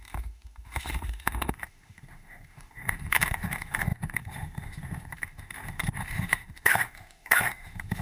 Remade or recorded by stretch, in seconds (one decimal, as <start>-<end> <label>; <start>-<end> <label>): 0.0-8.0 remade